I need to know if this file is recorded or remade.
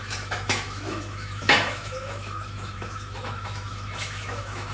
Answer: remade